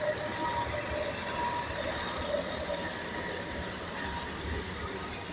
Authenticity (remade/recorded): recorded